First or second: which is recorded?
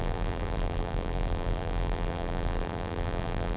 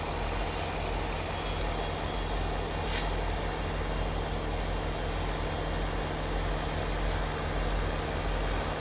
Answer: second